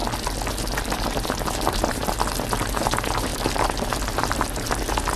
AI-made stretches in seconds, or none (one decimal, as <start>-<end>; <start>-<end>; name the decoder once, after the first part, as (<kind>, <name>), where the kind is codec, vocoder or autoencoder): 1.1-2.0 (vocoder, BigVGAN v2); 2.6-5.2